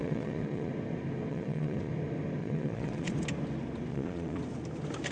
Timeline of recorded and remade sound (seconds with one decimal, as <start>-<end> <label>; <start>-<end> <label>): 0.0-0.7 remade; 0.7-1.3 recorded; 1.3-1.9 remade; 1.9-2.4 recorded; 2.4-3.1 remade; 3.1-3.9 recorded; 3.9-4.4 remade; 4.4-5.1 recorded